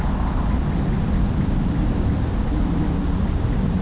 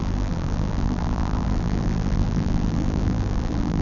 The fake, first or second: second